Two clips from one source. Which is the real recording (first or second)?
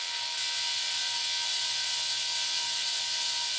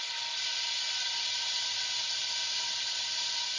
second